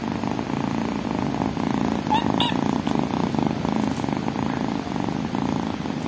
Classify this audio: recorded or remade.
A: recorded